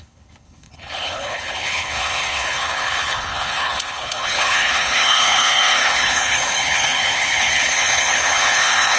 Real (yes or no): no